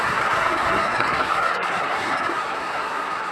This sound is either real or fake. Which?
fake